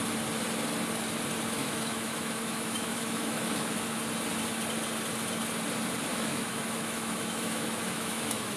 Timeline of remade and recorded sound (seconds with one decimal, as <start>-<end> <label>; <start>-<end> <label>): 0.0-1.6 recorded; 1.6-4.0 remade; 4.0-6.1 recorded; 6.1-8.6 remade

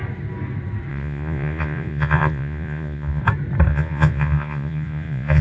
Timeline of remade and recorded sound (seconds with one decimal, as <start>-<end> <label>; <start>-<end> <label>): 0.0-0.9 recorded; 0.9-3.2 remade; 3.2-3.7 recorded; 3.7-5.4 remade

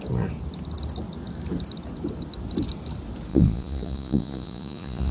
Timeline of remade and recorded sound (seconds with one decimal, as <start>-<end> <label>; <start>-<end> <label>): 0.0-3.3 recorded; 3.3-5.1 remade

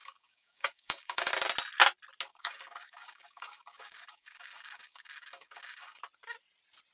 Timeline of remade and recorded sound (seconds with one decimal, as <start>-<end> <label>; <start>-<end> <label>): 0.0-1.3 remade; 1.3-2.3 recorded; 2.3-6.0 remade; 6.0-6.9 recorded

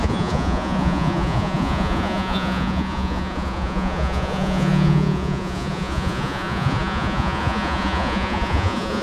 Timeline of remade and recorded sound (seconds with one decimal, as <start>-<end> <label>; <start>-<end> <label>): 0.0-9.0 remade

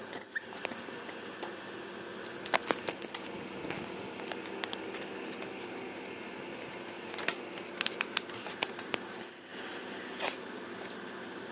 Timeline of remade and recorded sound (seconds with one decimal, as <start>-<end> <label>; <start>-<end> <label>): 0.0-11.5 recorded

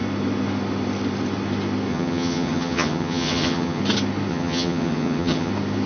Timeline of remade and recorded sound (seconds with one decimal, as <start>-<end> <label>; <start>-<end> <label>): 0.0-1.9 recorded; 1.9-3.8 remade; 3.8-4.3 recorded; 4.3-5.5 remade; 5.5-5.9 recorded